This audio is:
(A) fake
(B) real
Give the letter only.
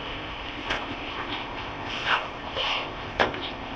A